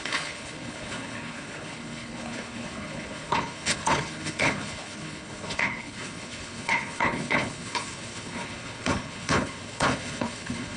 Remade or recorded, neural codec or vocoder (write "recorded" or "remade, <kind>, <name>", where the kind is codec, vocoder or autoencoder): remade, codec, HILCodec